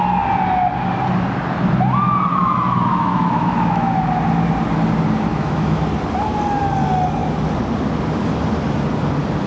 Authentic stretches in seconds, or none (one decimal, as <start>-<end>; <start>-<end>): 0.0-2.3; 4.2-5.3; 5.8-9.5